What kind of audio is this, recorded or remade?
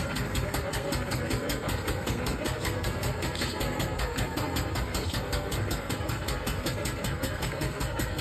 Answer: remade